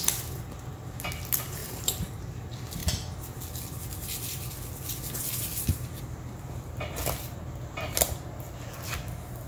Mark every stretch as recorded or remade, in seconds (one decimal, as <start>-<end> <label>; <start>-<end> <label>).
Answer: 0.0-1.6 recorded; 1.6-2.2 remade; 2.2-9.5 recorded